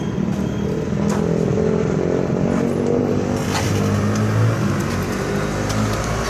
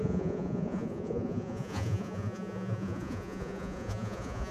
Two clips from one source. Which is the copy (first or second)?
second